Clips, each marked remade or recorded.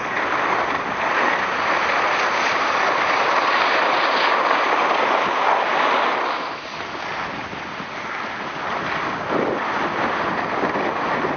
recorded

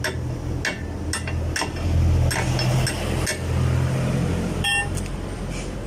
recorded